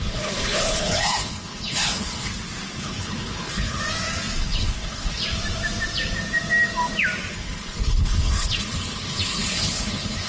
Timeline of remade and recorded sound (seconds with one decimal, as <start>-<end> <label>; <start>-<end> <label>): 0.0-2.3 remade; 2.3-2.8 recorded; 2.8-3.8 remade; 3.8-4.4 recorded; 4.4-5.2 remade; 5.2-7.3 recorded; 7.3-10.3 remade